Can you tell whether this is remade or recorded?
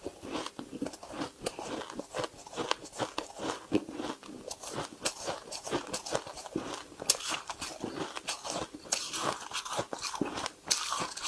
recorded